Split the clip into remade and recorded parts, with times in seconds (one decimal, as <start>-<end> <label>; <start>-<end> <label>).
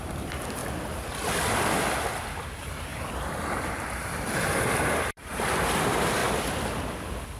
0.0-0.6 remade; 0.6-2.2 recorded; 2.2-6.2 remade; 6.2-7.4 recorded